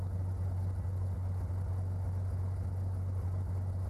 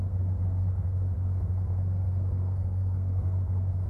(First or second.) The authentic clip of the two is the first